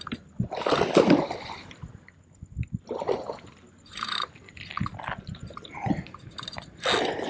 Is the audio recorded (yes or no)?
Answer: yes